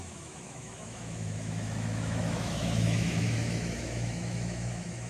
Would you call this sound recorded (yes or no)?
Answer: no